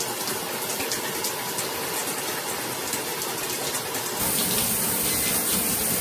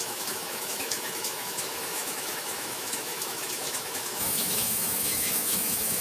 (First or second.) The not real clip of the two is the second